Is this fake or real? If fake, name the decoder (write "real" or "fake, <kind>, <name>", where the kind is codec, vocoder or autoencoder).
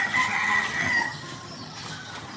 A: fake, vocoder, HiFi-GAN